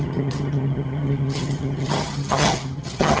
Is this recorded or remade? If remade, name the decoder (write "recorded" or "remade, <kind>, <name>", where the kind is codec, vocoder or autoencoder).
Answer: remade, vocoder, HiFi-GAN